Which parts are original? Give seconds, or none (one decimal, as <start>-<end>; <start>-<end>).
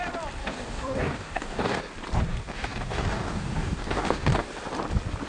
0.0-0.4; 1.8-2.3; 4.5-5.3